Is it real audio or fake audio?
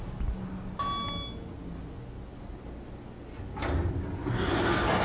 real